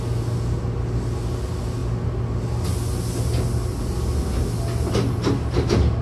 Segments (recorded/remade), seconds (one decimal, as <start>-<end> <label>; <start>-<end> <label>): 0.0-6.0 recorded